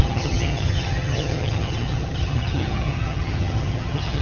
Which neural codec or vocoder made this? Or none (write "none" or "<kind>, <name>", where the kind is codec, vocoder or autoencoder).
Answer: vocoder, HiFi-GAN